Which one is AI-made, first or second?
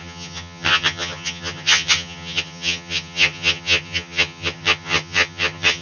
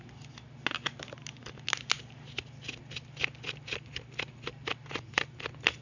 first